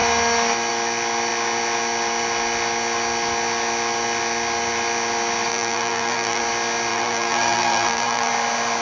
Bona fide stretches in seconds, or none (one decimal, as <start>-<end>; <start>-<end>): 0.0-5.5; 6.4-6.9; 8.3-8.8